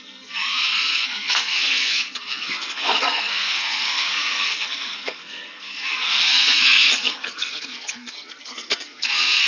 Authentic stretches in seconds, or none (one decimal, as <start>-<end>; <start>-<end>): none